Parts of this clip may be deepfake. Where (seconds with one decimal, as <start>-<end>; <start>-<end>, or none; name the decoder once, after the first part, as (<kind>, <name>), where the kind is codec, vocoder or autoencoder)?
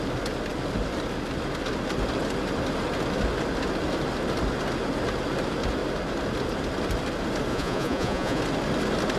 7.5-8.4 (vocoder, Vocos)